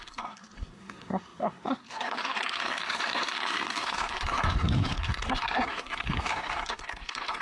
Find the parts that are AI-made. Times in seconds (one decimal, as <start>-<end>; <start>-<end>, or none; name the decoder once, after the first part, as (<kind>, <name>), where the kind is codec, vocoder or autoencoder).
0.0-7.4 (codec, SNAC)